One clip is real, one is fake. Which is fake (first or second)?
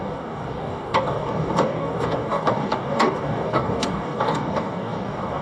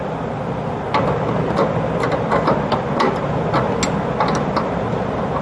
first